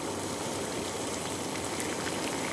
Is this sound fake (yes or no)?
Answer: no